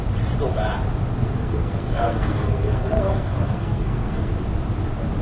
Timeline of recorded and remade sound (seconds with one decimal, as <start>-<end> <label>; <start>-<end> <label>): 0.0-1.2 recorded; 1.2-4.3 remade; 4.3-5.2 recorded